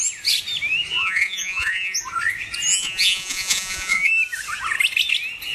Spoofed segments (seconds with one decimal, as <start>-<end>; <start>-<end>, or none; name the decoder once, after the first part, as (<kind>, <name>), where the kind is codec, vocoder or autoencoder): 1.0-2.0 (vocoder, Vocos); 2.7-4.1

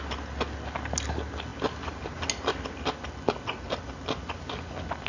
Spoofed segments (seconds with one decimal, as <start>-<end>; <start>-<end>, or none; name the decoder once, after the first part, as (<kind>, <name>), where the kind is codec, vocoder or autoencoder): none